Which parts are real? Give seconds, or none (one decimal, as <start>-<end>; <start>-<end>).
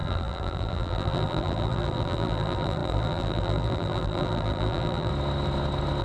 5.1-6.0